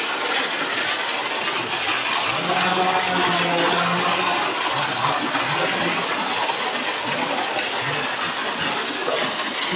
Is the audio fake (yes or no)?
no